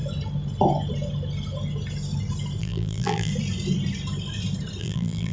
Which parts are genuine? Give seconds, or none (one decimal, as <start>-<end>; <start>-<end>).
0.0-2.6; 3.3-4.8